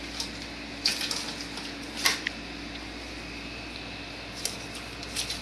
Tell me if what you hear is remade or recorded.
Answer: recorded